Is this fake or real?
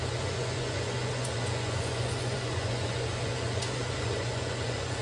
fake